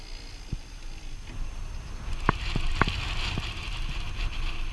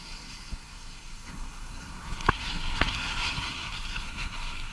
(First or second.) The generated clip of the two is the second